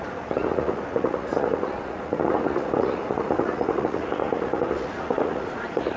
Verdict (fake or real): fake